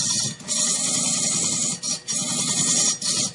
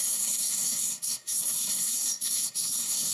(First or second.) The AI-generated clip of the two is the second